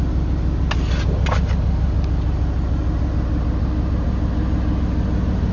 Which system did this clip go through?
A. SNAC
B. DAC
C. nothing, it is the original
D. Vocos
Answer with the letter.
C